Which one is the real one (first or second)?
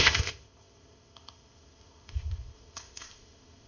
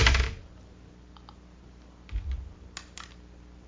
second